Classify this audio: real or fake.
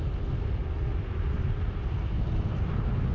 real